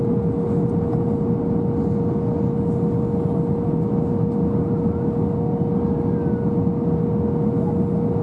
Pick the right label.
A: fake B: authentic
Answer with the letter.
B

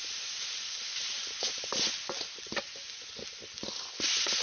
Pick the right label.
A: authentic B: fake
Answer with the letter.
A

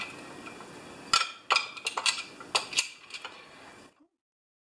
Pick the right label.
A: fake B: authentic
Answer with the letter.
B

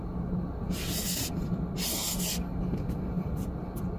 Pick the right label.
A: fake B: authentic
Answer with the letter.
B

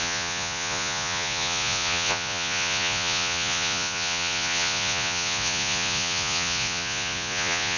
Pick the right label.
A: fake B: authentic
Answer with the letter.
A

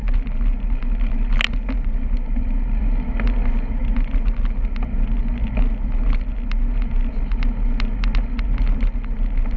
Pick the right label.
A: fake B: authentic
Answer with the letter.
B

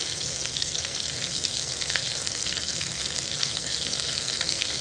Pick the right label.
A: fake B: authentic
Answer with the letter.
A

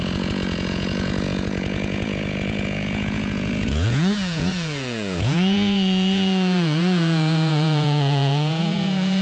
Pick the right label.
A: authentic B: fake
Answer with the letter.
B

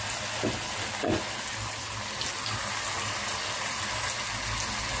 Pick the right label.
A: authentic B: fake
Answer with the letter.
A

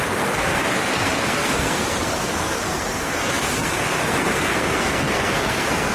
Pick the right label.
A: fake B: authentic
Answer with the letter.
A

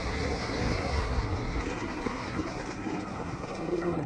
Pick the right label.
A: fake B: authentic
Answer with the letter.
A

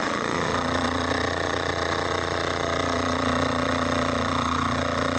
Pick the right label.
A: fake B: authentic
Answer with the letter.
A